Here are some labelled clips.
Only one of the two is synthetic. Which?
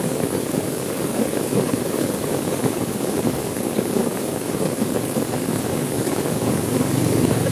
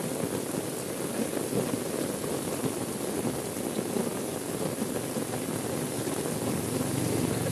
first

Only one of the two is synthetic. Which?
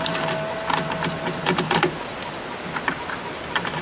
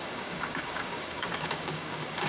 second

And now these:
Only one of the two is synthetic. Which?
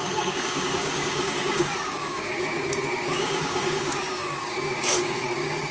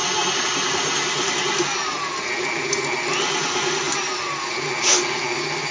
first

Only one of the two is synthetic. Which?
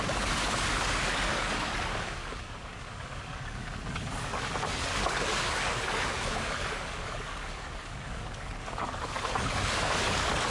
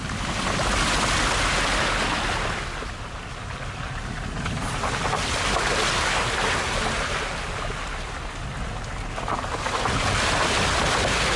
first